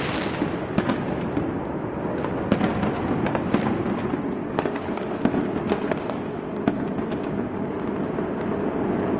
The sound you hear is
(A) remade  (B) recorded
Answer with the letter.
B